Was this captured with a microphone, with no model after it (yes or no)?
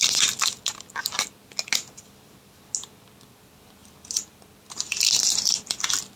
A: yes